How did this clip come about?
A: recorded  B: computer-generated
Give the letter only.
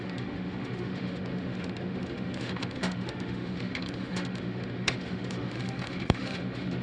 B